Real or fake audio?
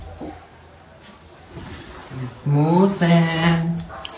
real